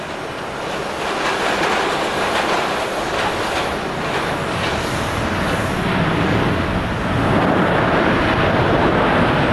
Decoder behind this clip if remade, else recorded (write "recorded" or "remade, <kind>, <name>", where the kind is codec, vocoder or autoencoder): recorded